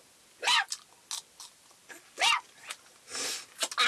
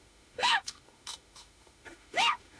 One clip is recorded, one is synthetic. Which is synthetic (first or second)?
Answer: second